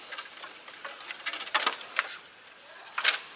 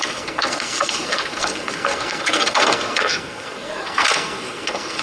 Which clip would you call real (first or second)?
first